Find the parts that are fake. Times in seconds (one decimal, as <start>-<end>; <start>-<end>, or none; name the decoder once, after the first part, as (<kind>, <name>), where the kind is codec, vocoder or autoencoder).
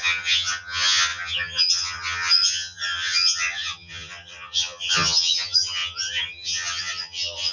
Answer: 0.0-7.5 (vocoder, HiFi-GAN)